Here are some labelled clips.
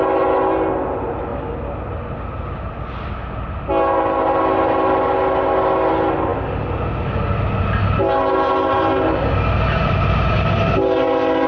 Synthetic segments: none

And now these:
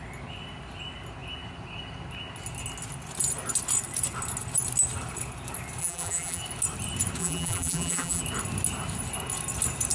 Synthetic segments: 5.8-6.4 (vocoder, BigVGAN v2); 7.2-8.2

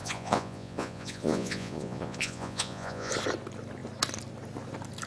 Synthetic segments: 0.0-3.1 (vocoder, Vocos)

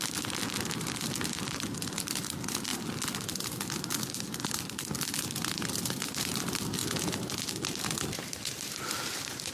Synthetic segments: none

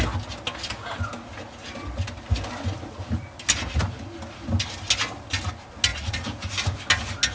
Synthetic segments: 5.9-6.5 (vocoder, Vocos)

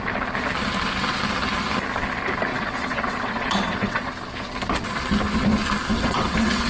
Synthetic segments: 2.5-4.1 (vocoder, WaveNeXt); 5.9-6.7

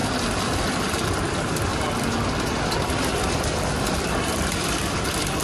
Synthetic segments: 0.6-1.7 (vocoder, BigVGAN v2); 2.9-5.4

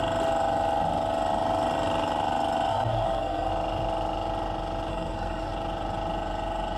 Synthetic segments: 2.7-3.5 (codec, SNAC); 4.9-5.5